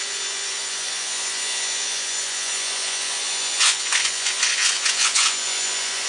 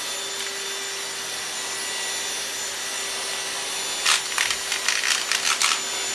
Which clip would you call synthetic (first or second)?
first